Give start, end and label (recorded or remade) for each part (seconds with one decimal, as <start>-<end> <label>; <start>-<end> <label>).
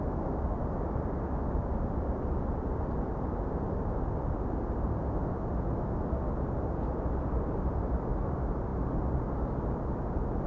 0.0-10.5 recorded